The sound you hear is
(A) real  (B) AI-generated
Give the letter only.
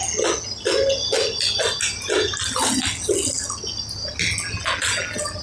A